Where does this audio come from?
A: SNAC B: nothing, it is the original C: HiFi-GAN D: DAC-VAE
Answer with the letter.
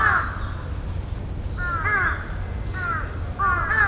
B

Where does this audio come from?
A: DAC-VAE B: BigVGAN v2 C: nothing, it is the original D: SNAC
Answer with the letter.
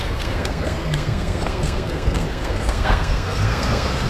D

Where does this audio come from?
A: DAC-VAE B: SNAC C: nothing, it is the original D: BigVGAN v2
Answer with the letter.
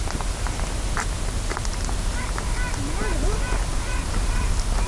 C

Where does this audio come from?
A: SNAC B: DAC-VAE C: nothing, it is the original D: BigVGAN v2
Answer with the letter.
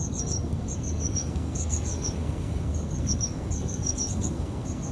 A